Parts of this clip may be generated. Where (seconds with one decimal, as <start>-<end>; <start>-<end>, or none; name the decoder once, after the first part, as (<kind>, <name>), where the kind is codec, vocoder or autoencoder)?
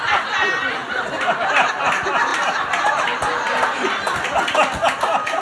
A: none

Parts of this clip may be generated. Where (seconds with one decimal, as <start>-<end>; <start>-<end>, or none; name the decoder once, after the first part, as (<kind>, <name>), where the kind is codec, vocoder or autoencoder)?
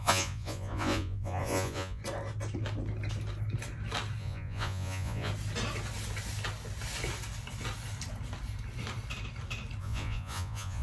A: 0.0-2.0 (vocoder, Vocos); 4.2-5.3; 9.8-10.8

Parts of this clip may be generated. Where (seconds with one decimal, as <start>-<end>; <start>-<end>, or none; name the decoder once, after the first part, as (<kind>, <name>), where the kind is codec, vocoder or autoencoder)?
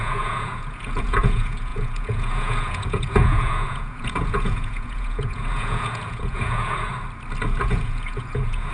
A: 0.0-6.9 (vocoder, Vocos); 7.6-8.7